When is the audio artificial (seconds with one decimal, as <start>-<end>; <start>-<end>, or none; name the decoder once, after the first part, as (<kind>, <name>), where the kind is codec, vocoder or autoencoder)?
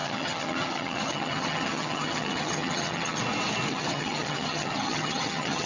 0.0-3.2 (vocoder, HiFi-GAN); 3.7-5.7